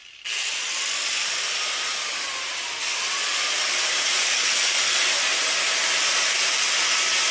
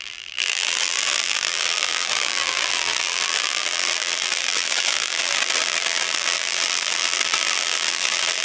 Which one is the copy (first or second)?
second